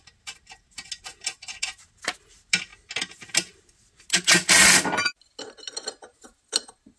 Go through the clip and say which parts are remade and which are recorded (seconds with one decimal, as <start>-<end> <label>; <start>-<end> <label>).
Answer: 0.0-7.0 recorded